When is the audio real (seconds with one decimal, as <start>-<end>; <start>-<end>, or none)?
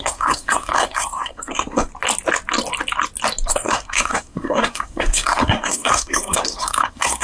1.9-3.5